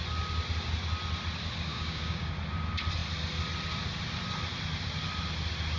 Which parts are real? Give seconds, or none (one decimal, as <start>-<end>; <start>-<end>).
0.0-1.7; 2.3-5.8